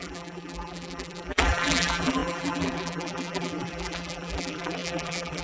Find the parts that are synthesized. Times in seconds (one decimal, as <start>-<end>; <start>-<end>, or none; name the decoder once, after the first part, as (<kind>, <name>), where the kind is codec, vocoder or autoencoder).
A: 0.0-5.4 (vocoder, BigVGAN v2)

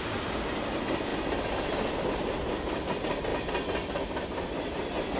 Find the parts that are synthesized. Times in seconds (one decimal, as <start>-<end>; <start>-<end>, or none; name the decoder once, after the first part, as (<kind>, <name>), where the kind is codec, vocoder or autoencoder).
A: none

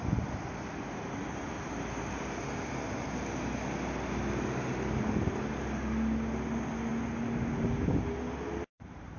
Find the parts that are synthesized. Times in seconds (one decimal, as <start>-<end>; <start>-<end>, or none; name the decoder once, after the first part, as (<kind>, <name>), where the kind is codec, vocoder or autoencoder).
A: none

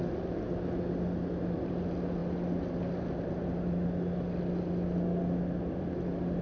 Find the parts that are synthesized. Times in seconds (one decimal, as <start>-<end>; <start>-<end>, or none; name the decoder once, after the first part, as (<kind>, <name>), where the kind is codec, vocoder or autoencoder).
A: none